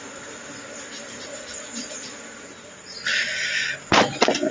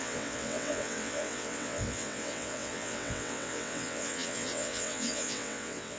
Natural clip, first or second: first